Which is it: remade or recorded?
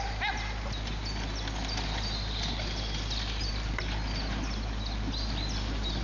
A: recorded